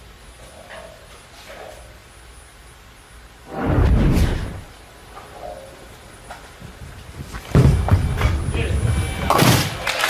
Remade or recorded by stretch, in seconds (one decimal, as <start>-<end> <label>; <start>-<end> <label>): 0.0-10.1 recorded